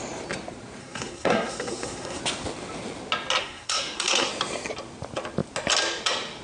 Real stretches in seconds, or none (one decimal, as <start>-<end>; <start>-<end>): 0.0-0.8; 2.2-3.4; 4.3-6.4